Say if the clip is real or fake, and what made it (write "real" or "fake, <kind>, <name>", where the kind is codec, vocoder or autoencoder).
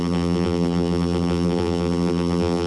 fake, vocoder, BigVGAN v2